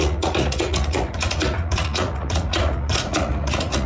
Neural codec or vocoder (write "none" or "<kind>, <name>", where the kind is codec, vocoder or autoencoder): vocoder, Vocos